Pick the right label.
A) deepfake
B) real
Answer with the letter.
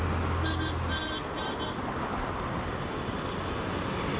B